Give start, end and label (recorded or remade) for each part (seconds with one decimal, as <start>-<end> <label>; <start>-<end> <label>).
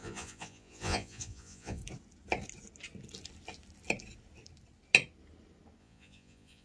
0.0-1.8 remade; 1.8-5.8 recorded; 5.8-6.6 remade